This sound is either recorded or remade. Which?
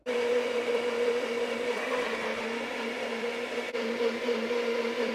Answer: remade